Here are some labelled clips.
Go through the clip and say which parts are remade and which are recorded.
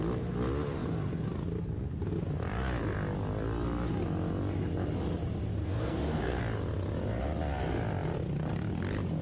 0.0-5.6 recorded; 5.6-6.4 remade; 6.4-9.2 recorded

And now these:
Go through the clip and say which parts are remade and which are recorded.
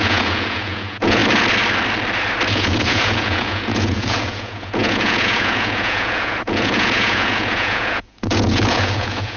0.0-1.2 remade; 1.2-2.5 recorded; 2.5-9.4 remade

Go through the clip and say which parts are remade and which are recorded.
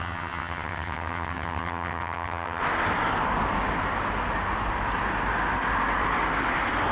0.0-2.6 remade; 2.6-6.9 recorded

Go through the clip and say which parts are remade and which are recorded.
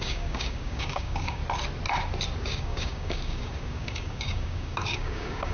0.0-1.4 remade; 1.4-2.4 recorded; 2.4-5.5 remade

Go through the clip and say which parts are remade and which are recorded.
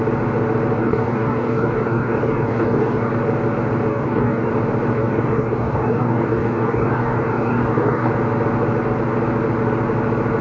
0.0-0.8 recorded; 0.8-3.1 remade; 3.1-3.9 recorded; 3.9-4.5 remade; 4.5-5.0 recorded; 5.0-8.1 remade; 8.1-10.4 recorded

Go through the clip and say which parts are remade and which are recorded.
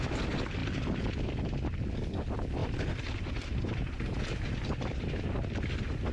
0.0-2.6 recorded; 2.6-5.3 remade; 5.3-6.1 recorded